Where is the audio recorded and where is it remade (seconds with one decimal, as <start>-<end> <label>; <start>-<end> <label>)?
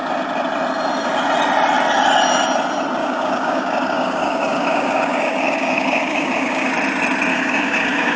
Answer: 0.0-3.0 recorded; 3.0-6.7 remade; 6.7-7.3 recorded; 7.3-8.2 remade